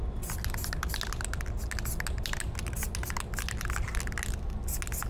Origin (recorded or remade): recorded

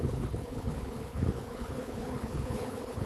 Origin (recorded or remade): remade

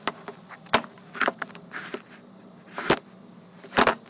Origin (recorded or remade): recorded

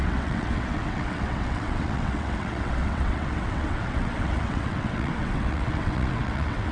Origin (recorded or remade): remade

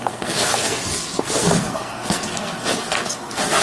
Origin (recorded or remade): remade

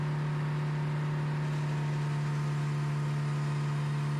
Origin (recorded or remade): recorded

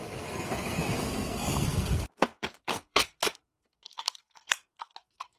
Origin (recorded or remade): remade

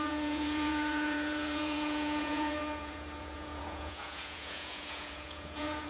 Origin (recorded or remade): remade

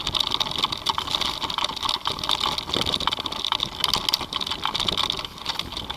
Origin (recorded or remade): recorded